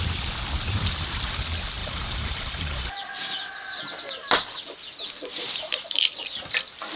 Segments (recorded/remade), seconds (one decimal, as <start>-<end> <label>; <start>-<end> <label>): 0.0-1.8 recorded; 1.8-3.1 remade; 3.1-7.0 recorded